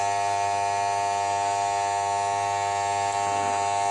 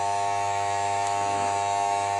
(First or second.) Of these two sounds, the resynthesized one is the second